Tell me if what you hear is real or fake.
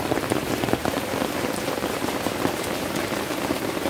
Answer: fake